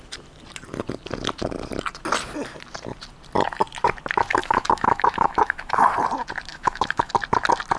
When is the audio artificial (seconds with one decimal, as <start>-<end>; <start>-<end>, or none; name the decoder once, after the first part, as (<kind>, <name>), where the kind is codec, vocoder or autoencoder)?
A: 4.4-5.8 (autoencoder, DAC-VAE); 6.5-7.1